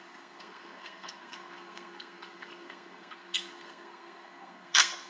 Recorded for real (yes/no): no